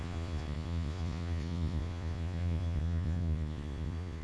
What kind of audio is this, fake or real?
fake